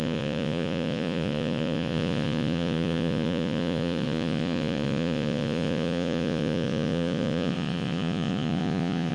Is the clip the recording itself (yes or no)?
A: no